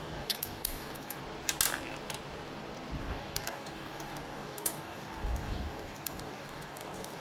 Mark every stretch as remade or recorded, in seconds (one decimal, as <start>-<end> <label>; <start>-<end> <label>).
0.0-1.2 remade; 1.2-3.0 recorded; 3.0-7.2 remade